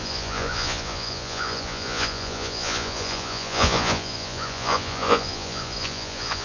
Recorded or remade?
remade